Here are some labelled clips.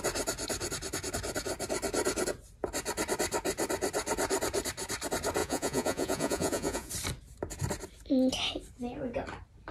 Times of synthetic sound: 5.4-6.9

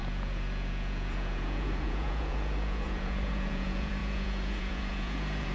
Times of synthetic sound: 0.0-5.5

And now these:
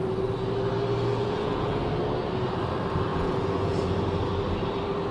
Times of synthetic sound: 1.1-1.9; 3.1-3.8